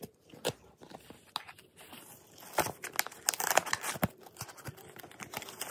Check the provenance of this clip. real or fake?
real